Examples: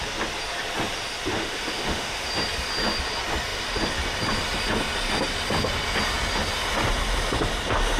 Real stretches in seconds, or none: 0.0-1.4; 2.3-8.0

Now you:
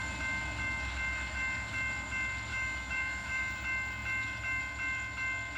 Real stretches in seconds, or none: 0.0-2.5; 3.5-5.6

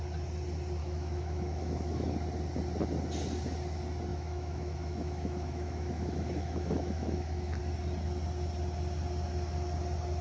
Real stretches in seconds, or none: 0.0-0.8; 2.1-4.1; 7.6-10.2

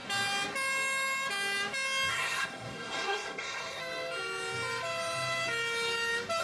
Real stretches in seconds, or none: 0.0-2.1; 3.8-6.4

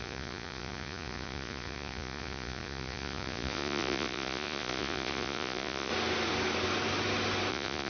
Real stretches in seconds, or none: 5.9-7.5